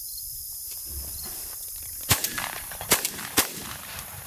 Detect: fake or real fake